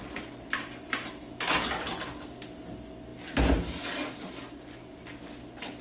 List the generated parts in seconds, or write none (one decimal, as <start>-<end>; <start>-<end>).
none